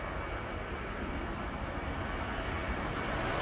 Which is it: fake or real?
real